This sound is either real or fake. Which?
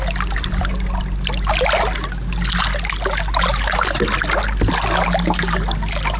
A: real